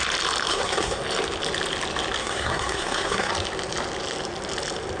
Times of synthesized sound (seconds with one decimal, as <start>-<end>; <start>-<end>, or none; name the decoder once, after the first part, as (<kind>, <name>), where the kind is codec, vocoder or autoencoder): 0.5-1.0 (codec, SNAC); 2.2-3.3